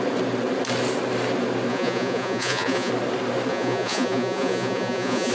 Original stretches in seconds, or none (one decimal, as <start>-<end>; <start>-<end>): 0.0-1.7; 2.9-3.5